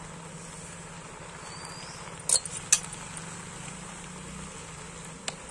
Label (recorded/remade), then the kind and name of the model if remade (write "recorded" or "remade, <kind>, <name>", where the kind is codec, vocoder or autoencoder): recorded